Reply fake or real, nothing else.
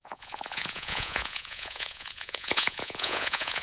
fake